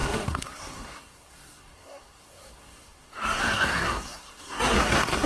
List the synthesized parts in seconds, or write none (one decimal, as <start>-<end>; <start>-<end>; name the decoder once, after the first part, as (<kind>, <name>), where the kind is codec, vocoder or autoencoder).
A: 0.0-5.3 (codec, SNAC)